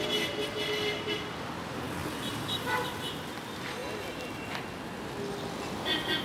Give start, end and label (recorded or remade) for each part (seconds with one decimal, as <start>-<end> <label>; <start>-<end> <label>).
0.0-2.0 recorded; 2.0-2.9 remade; 2.9-6.2 recorded